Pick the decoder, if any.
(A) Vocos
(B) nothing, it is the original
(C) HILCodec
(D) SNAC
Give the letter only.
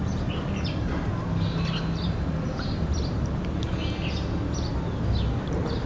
B